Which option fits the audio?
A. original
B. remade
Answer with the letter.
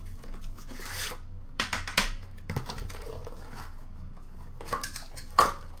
B